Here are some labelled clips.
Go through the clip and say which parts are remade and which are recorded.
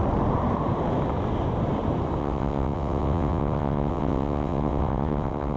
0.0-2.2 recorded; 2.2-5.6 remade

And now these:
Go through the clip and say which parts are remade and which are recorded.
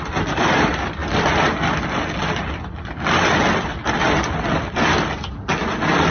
0.0-6.1 recorded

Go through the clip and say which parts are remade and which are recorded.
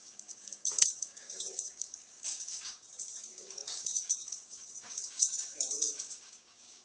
0.0-6.8 remade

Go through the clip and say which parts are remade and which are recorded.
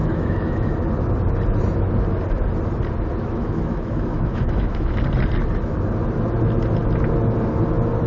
0.0-0.7 remade; 0.7-3.2 recorded; 3.2-5.0 remade; 5.0-8.1 recorded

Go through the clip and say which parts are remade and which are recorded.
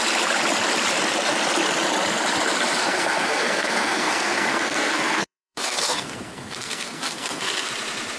0.0-2.8 recorded; 2.8-7.7 remade; 7.7-8.2 recorded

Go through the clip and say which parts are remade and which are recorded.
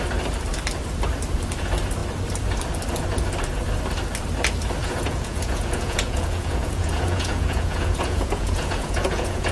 0.0-4.8 recorded; 4.8-9.5 remade